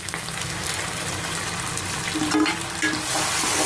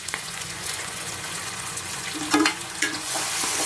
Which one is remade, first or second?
second